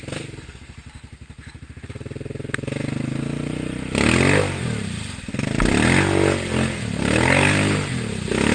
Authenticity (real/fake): real